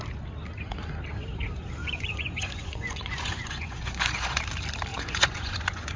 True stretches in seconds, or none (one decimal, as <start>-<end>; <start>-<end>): 0.0-1.8; 4.4-4.9